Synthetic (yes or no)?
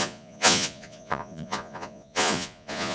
yes